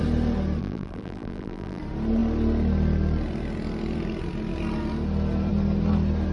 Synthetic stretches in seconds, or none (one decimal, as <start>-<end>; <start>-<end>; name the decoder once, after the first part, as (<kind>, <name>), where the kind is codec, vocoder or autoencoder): 0.6-1.8 (vocoder, BigVGAN v2)